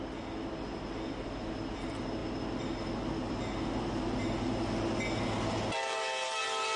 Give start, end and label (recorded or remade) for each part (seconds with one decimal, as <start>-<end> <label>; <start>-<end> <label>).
0.0-6.8 recorded

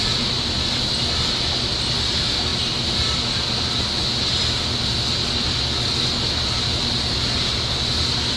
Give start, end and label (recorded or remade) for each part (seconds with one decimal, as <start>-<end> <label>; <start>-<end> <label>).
0.0-8.4 recorded

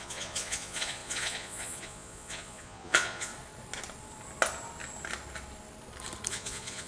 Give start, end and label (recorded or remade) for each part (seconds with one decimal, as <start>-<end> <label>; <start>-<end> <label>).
0.0-3.3 remade; 3.3-6.3 recorded; 6.3-6.9 remade

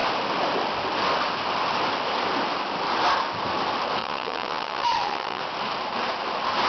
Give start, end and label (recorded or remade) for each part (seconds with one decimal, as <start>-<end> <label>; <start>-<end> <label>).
0.0-4.0 recorded; 4.0-5.4 remade; 5.4-6.7 recorded

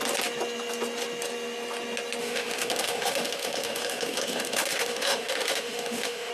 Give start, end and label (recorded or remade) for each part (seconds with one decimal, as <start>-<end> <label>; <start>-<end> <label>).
0.0-2.2 recorded; 2.2-6.3 remade

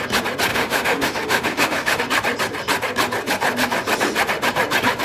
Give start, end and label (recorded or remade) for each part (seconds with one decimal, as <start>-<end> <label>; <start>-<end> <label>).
0.0-0.5 recorded; 0.5-2.0 remade; 2.0-5.0 recorded

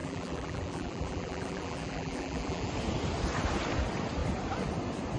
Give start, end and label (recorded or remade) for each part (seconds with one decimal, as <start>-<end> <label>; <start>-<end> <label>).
0.0-2.7 remade; 2.7-5.2 recorded